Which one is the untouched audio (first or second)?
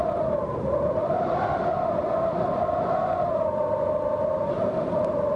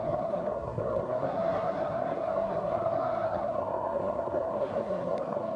first